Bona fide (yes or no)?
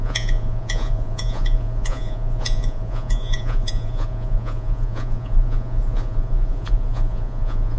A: no